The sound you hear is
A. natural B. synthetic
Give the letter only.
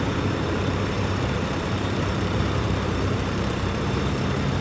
B